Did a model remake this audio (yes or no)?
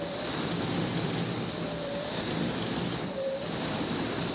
yes